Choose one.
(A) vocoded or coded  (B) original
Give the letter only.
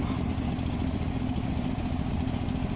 B